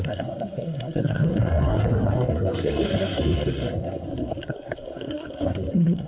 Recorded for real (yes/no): no